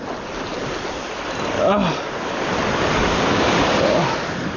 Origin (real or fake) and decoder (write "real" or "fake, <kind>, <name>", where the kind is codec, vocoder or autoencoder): real